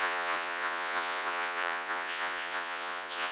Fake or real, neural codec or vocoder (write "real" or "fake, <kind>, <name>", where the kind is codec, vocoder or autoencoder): fake, vocoder, Vocos